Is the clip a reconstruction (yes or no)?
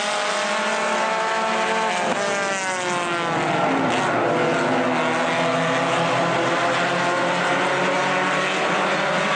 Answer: no